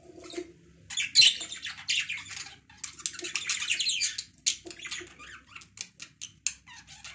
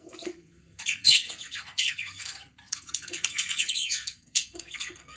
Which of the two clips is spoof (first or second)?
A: second